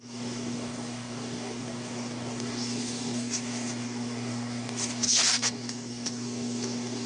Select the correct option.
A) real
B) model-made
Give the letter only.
B